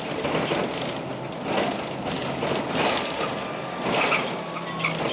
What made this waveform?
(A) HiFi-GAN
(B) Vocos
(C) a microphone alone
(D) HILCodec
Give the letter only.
C